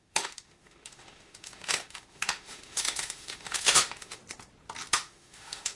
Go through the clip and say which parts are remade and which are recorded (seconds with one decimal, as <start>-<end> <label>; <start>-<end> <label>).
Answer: 0.0-4.2 remade; 4.2-4.9 recorded; 4.9-5.8 remade